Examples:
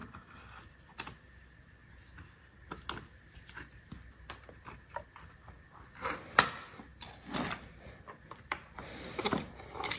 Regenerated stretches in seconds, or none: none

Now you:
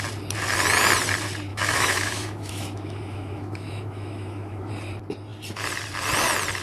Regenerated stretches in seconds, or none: 1.5-4.7 (autoencoder, DAC-VAE)

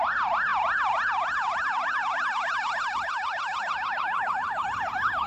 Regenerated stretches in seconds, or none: none

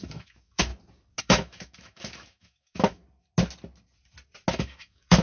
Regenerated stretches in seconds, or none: 0.0-0.7 (autoencoder, DAC-VAE); 1.2-3.0; 4.5-5.2

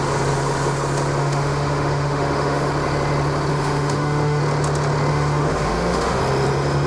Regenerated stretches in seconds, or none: 1.2-2.7 (autoencoder, DAC-VAE); 3.5-4.4; 5.1-6.2